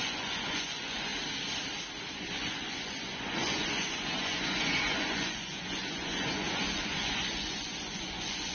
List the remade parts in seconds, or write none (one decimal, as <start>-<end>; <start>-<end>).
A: 0.0-1.1; 2.1-8.5